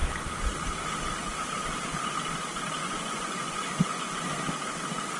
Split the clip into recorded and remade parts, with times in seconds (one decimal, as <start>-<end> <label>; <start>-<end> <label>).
0.0-2.8 recorded; 2.8-4.3 remade; 4.3-5.2 recorded